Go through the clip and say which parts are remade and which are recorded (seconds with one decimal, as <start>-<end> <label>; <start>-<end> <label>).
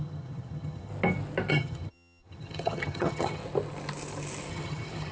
0.0-0.9 remade; 0.9-1.5 recorded; 1.5-3.4 remade; 3.4-4.5 recorded; 4.5-5.1 remade